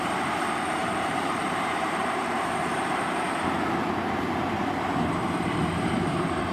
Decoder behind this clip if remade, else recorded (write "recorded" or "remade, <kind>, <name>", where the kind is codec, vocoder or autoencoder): remade, vocoder, BigVGAN v2